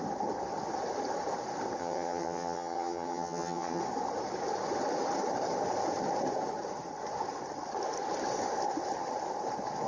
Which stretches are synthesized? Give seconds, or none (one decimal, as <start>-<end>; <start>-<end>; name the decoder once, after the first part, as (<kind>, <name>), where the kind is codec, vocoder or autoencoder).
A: 1.8-3.8 (vocoder, HiFi-GAN)